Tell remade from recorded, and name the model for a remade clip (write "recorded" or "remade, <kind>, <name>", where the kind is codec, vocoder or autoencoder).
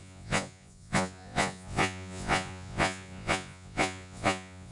remade, vocoder, Vocos